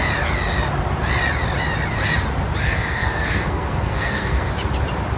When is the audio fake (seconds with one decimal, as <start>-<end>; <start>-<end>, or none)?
2.6-4.5